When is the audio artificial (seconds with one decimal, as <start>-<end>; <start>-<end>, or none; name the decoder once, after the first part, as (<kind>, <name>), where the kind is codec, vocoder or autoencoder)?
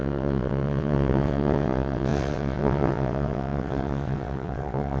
0.0-5.0 (vocoder, WaveNeXt)